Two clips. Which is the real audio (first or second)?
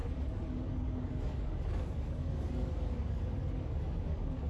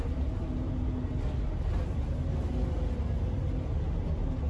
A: second